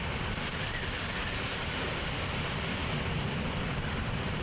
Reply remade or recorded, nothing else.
recorded